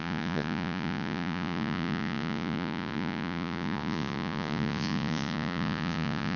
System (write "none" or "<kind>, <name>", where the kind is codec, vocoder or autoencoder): vocoder, Vocos